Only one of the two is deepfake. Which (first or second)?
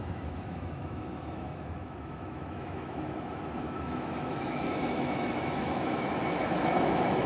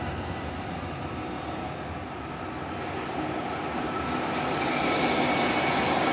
first